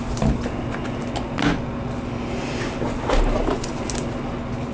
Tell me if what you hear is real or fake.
real